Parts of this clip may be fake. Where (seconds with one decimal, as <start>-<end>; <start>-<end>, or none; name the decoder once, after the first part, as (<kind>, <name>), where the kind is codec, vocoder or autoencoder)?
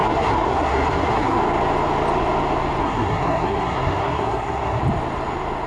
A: 0.0-1.4 (codec, SNAC); 2.8-4.8